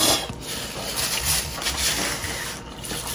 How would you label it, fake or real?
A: real